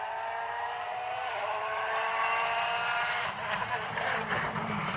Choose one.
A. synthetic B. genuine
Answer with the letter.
A